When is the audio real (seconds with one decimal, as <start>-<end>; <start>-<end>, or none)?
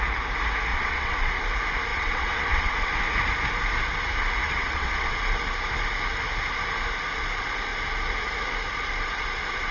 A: 0.0-0.7; 1.3-1.9; 3.0-4.4; 5.1-9.7